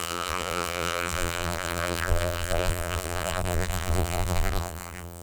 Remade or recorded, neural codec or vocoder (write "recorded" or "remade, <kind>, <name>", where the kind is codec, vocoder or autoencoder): remade, vocoder, BigVGAN v2